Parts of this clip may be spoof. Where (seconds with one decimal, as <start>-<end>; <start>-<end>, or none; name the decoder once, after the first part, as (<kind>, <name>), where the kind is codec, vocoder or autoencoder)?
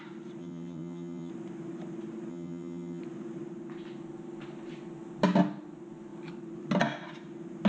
0.4-1.3 (vocoder, HiFi-GAN); 2.3-3.0